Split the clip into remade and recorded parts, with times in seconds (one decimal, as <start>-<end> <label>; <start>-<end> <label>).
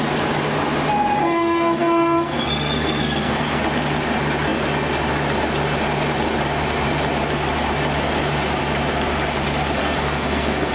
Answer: 0.0-1.2 recorded; 1.2-3.6 remade; 3.6-9.8 recorded; 9.8-10.7 remade